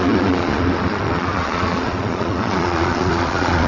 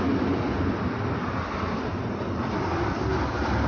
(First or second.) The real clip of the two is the second